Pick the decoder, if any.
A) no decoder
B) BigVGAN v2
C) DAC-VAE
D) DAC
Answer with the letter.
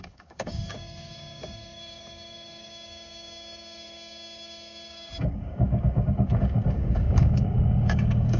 D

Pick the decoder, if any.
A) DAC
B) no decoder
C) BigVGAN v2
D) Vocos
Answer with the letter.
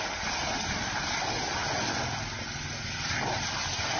B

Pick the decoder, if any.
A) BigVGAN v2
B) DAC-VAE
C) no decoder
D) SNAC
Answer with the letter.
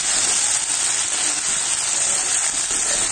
C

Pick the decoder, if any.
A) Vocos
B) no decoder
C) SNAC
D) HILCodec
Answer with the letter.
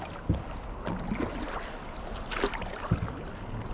B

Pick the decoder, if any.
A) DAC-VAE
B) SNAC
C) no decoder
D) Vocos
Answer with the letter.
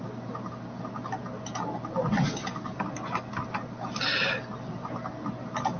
C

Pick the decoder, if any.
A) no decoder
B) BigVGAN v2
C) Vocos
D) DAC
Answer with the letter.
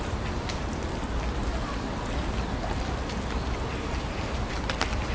A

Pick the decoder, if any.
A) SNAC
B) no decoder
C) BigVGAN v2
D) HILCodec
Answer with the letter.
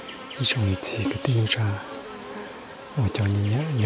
B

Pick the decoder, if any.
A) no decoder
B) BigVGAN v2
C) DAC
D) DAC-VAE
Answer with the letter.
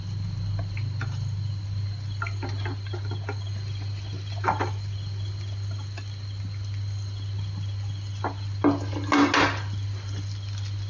A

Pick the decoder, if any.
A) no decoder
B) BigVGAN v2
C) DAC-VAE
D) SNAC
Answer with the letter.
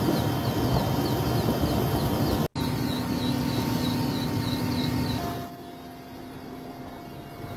A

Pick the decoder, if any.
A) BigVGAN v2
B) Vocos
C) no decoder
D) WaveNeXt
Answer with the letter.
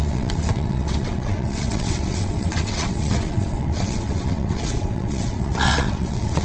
D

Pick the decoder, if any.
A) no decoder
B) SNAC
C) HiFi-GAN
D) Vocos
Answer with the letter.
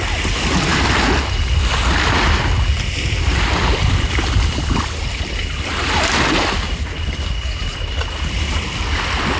A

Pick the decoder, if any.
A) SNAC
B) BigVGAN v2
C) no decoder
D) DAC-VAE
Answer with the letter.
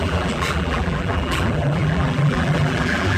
B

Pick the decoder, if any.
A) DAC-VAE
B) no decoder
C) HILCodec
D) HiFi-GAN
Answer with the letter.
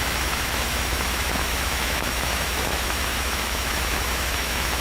A